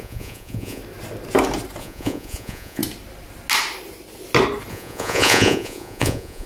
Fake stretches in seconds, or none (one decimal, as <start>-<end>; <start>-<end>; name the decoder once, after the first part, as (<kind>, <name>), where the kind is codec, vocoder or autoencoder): 0.0-0.8 (vocoder, Vocos); 1.8-2.8; 4.7-6.5